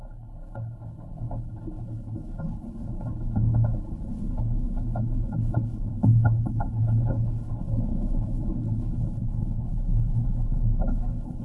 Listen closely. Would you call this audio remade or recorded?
remade